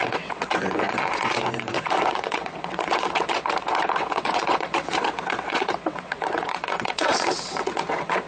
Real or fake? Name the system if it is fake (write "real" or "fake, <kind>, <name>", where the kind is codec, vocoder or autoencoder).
fake, vocoder, WaveNeXt